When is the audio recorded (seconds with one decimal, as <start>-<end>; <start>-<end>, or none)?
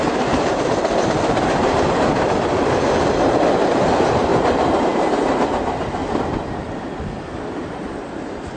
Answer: 4.3-4.8; 6.0-7.5